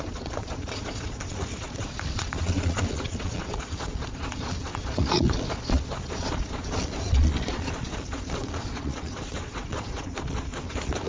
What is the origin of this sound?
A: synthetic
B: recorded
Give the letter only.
A